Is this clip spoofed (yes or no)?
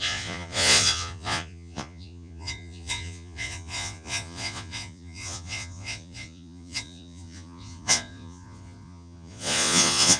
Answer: yes